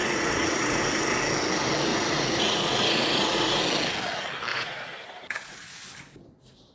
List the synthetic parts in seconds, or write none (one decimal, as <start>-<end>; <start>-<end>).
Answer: 0.0-0.8; 1.9-3.6; 4.5-5.8